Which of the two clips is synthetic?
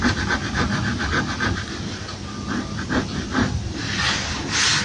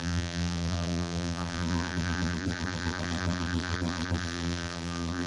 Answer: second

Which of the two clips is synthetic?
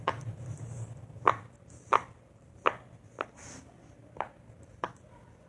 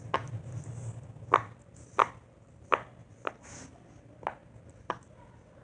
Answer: first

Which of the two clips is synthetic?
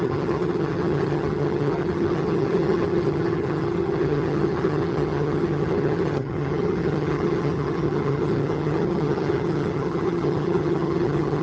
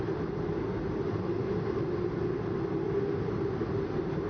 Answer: first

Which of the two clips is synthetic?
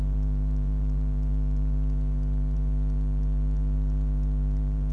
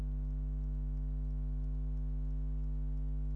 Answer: first